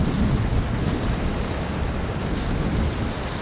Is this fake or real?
real